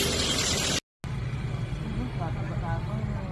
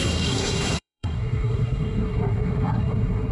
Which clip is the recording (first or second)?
first